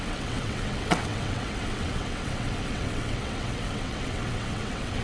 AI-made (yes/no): yes